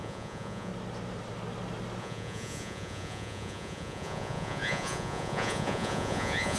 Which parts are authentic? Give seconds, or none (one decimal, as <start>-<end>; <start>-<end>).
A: 0.7-2.0